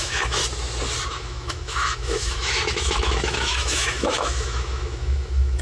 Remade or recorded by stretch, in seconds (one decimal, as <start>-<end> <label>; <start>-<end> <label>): 0.0-0.4 remade; 0.4-1.1 recorded; 1.1-5.6 remade